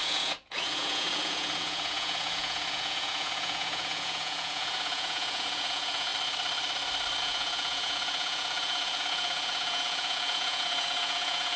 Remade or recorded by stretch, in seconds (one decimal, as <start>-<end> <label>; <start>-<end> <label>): 0.0-6.1 remade; 6.1-7.2 recorded; 7.2-11.6 remade